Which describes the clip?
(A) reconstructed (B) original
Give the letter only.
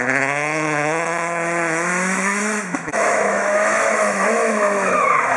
A